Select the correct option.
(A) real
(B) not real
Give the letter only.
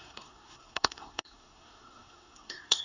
B